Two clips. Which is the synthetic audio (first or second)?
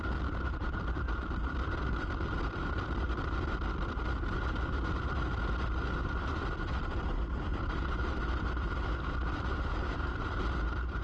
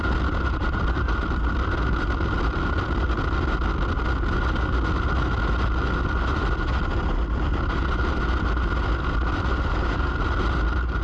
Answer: first